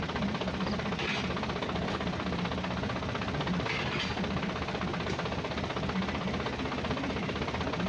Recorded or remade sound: recorded